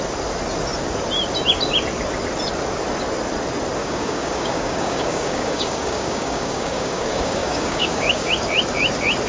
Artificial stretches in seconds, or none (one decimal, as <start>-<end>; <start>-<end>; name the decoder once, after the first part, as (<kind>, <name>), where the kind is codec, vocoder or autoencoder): 3.8-8.3 (codec, DAC)